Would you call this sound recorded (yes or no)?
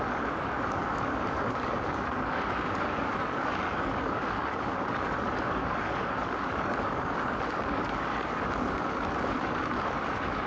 no